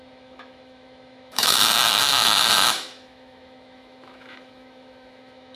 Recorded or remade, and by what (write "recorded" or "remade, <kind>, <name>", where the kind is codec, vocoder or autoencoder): remade, autoencoder, DAC-VAE